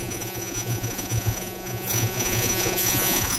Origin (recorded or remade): remade